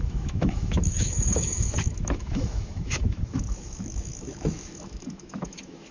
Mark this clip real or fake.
fake